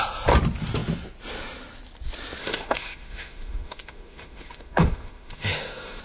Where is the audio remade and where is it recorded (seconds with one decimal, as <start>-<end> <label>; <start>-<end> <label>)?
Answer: 0.0-2.4 recorded; 2.4-6.0 remade